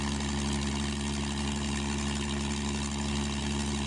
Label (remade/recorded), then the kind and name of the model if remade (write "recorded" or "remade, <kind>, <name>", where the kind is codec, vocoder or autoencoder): recorded